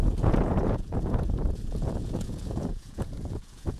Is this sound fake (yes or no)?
yes